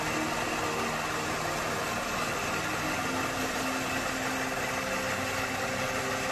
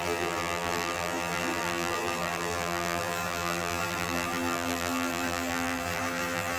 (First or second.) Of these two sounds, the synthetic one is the second